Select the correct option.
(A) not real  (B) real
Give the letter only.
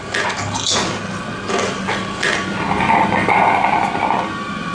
B